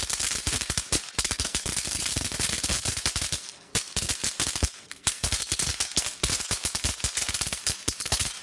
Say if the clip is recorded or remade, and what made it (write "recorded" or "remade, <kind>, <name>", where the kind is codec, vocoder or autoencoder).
remade, codec, SNAC